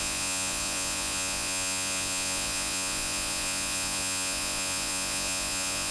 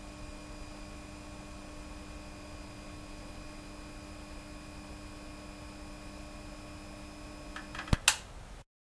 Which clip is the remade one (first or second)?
first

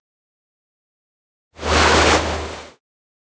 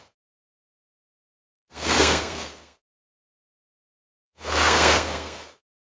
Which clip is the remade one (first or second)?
second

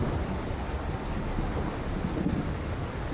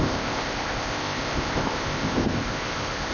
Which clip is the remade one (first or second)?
second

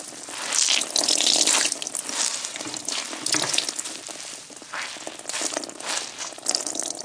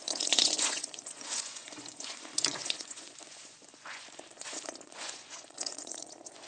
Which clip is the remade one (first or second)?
second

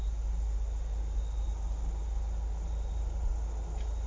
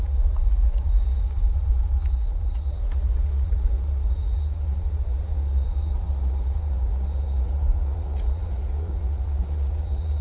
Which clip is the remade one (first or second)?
second